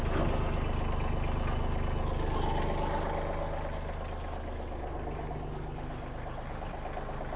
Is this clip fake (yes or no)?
no